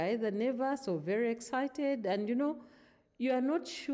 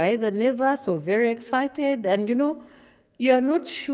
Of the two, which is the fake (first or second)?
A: second